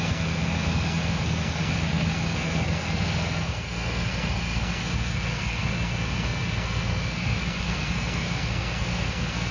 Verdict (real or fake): fake